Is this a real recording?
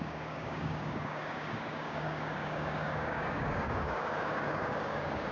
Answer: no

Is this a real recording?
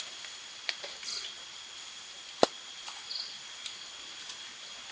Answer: yes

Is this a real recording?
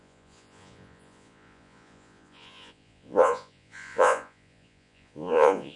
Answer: no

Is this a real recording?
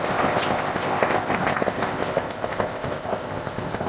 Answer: no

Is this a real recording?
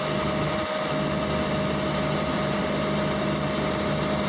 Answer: yes